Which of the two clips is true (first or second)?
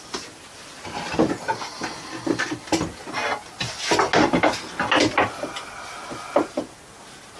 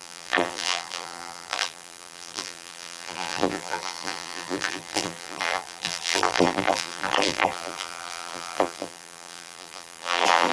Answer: first